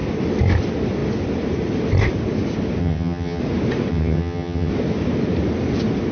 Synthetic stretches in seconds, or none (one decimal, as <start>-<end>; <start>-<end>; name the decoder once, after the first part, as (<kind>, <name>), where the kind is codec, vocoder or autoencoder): 2.8-3.4 (vocoder, HiFi-GAN); 3.9-4.7